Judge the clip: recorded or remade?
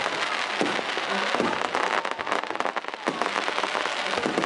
recorded